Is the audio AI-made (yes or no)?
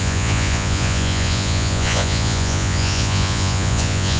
yes